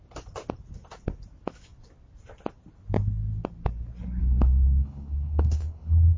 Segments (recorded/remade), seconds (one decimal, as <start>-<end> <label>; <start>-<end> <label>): 0.0-4.2 recorded; 4.2-6.2 remade